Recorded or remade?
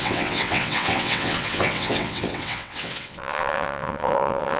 remade